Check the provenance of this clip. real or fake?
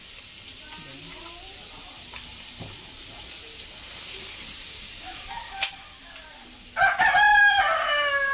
real